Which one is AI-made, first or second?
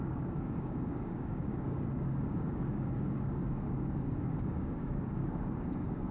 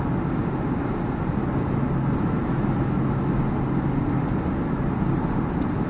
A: first